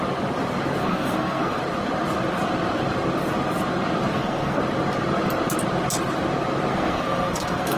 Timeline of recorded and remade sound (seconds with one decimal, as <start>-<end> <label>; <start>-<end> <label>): 0.0-0.8 recorded; 0.8-1.6 remade; 1.6-4.1 recorded; 4.1-4.6 remade; 4.6-6.7 recorded; 6.7-7.8 remade